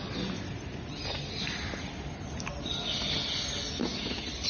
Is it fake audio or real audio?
real